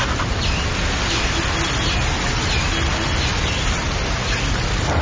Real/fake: real